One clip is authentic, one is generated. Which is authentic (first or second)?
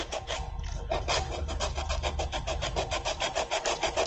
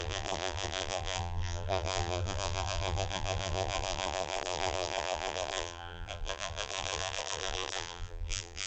first